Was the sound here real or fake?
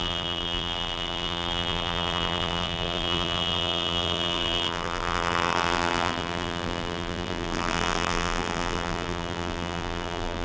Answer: fake